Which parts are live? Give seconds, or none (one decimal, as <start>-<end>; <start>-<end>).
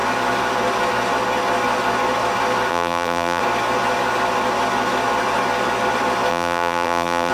0.0-2.7; 3.4-6.3